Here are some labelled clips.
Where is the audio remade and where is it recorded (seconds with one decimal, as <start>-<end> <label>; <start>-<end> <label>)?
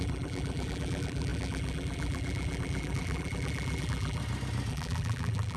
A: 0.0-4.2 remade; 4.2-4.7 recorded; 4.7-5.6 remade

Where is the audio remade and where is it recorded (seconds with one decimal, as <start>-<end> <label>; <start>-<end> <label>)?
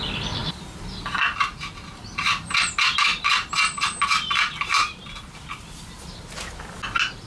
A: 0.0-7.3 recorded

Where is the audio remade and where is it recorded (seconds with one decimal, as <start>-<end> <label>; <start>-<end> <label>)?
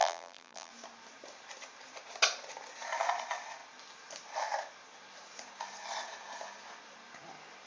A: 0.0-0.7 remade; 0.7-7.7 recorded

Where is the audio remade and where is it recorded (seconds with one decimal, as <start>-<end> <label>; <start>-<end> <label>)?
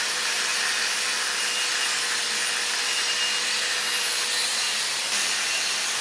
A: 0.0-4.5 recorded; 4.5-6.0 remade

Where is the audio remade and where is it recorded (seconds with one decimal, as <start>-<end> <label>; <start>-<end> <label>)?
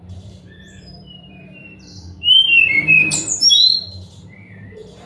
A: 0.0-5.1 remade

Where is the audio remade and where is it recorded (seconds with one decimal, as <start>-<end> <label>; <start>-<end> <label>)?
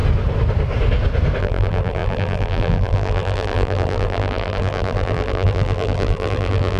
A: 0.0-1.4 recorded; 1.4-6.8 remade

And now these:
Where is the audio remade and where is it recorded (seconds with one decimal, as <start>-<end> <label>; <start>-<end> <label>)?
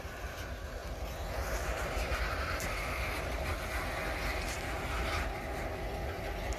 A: 0.0-3.5 recorded; 3.5-5.4 remade; 5.4-6.6 recorded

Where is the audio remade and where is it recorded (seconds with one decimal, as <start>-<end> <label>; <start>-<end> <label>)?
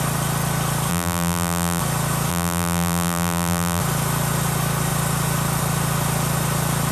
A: 0.0-0.9 recorded; 0.9-1.8 remade; 1.8-2.3 recorded; 2.3-3.8 remade; 3.8-6.9 recorded